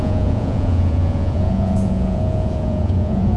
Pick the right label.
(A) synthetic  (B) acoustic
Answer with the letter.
A